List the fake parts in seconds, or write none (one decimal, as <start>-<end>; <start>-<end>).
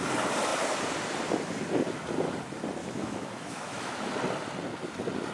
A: 2.8-4.0